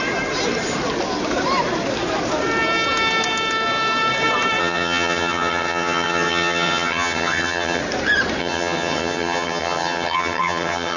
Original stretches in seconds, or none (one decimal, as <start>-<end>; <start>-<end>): 0.0-4.6; 7.8-8.4